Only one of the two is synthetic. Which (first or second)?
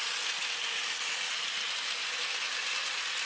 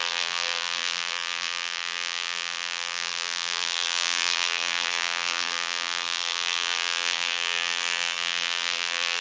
second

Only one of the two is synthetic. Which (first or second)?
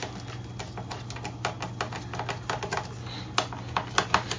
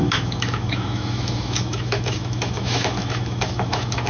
second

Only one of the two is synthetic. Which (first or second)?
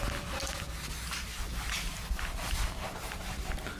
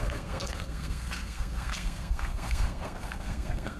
second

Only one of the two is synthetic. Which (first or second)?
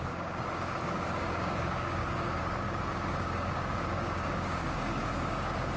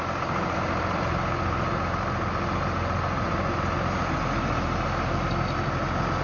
first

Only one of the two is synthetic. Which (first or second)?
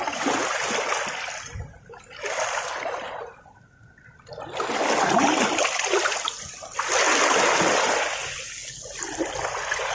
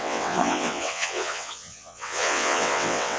second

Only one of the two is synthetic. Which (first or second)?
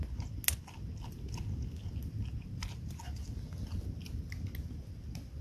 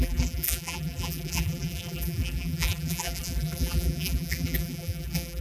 second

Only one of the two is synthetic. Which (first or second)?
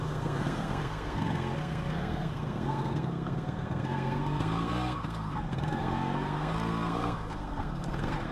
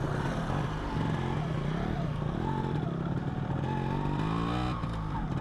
first